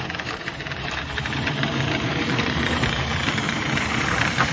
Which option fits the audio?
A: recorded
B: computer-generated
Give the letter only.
B